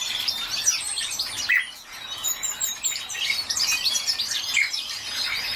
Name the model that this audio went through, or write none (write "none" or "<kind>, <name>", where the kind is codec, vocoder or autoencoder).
vocoder, BigVGAN v2